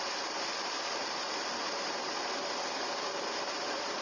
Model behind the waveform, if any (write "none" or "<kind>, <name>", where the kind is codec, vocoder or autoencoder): vocoder, BigVGAN v2